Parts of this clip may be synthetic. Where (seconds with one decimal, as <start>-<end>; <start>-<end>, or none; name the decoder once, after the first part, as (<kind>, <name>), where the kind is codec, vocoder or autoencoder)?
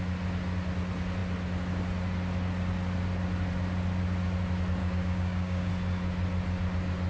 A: 4.8-5.7 (codec, DAC)